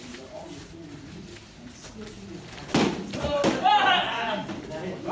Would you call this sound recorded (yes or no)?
yes